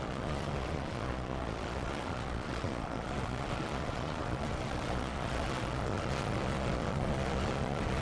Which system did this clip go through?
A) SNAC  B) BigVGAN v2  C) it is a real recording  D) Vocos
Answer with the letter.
D